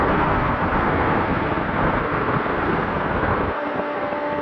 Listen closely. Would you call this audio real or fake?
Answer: fake